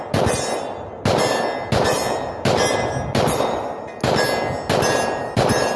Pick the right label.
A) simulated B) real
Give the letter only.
B